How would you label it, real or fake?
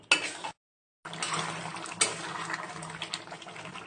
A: real